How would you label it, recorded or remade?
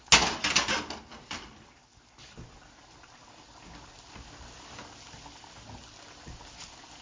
recorded